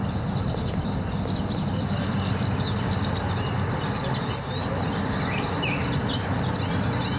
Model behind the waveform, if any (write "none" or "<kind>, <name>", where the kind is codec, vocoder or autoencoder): none